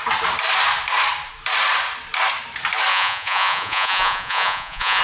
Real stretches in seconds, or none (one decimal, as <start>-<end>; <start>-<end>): 0.0-2.9